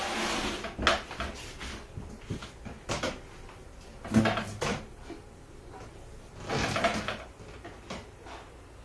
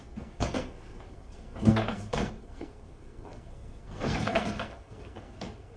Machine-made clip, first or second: second